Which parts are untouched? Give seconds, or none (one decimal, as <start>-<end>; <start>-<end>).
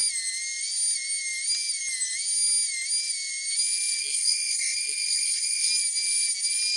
0.0-4.0; 5.7-6.8